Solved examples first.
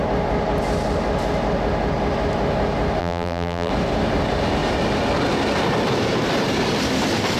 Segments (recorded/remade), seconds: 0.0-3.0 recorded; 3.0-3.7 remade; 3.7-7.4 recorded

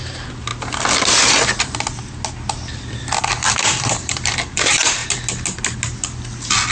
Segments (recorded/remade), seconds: 0.0-0.5 remade; 0.5-3.5 recorded; 3.5-5.0 remade; 5.0-6.7 recorded

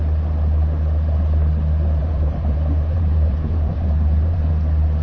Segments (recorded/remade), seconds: 0.0-2.0 recorded; 2.0-4.5 remade; 4.5-5.0 recorded

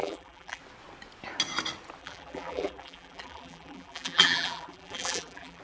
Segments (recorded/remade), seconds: 0.0-0.6 remade; 0.6-2.0 recorded; 2.0-5.6 remade

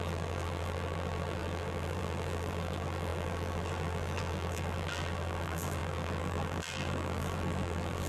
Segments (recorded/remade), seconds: 0.0-8.1 remade